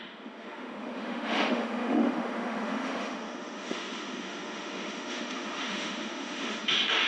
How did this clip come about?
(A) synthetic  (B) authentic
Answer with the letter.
A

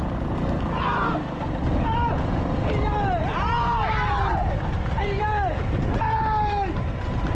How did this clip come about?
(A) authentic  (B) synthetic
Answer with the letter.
A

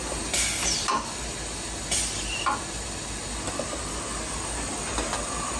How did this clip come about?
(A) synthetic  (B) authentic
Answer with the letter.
B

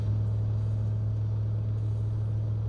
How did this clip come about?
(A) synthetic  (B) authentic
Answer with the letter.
B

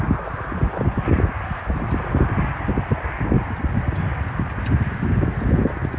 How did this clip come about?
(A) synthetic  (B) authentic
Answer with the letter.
B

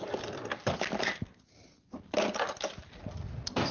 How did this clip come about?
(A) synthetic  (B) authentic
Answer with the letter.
B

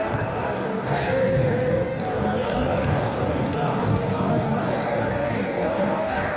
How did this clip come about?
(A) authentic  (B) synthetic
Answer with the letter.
B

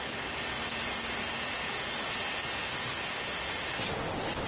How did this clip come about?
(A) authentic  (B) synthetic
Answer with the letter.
A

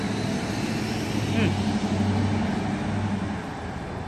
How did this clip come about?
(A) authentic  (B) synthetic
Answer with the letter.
A